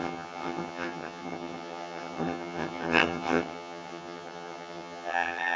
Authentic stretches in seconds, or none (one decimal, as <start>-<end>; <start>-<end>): none